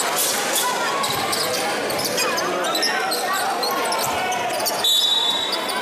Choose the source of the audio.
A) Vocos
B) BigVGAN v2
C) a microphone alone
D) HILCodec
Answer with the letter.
C